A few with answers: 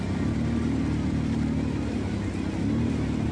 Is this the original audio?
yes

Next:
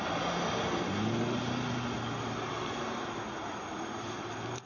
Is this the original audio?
yes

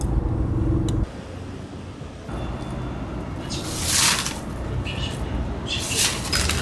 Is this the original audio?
yes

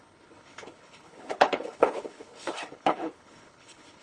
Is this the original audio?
no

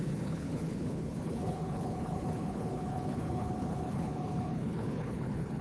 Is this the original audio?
no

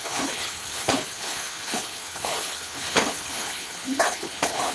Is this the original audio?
no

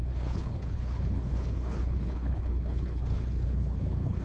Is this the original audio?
no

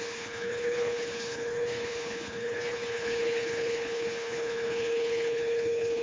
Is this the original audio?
no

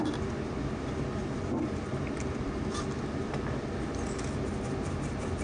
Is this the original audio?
yes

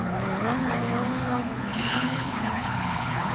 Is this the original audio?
no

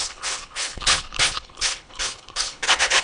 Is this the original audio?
no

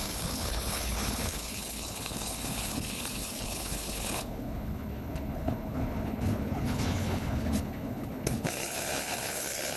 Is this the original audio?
no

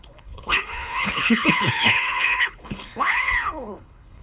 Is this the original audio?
no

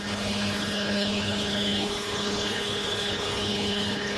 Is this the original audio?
no